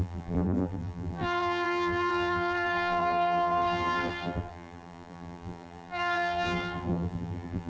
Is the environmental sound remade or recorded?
remade